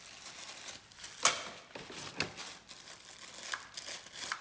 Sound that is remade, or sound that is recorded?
recorded